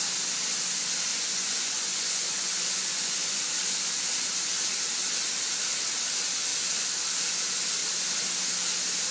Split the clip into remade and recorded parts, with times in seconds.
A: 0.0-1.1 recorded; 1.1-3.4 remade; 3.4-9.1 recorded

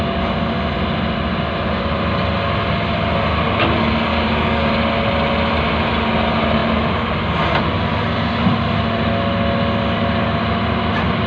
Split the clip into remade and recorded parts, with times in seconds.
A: 0.0-4.1 recorded; 4.1-4.7 remade; 4.7-11.3 recorded

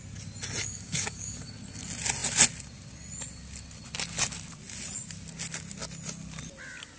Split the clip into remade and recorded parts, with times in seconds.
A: 0.0-0.6 recorded; 0.6-1.4 remade; 1.4-7.0 recorded

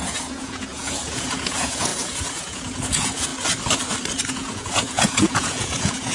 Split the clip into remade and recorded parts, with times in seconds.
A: 0.0-3.3 remade; 3.3-4.3 recorded; 4.3-6.1 remade

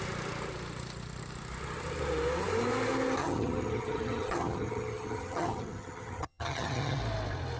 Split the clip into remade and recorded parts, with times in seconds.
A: 0.0-3.2 recorded; 3.2-7.0 remade; 7.0-7.6 recorded

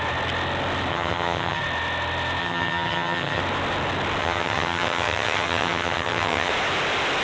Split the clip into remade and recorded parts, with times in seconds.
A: 0.0-0.9 recorded; 0.9-1.6 remade; 1.6-2.4 recorded; 2.4-3.4 remade; 3.4-4.2 recorded; 4.2-6.5 remade; 6.5-7.2 recorded